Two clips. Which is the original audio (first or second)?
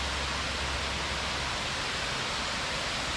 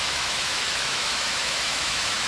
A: first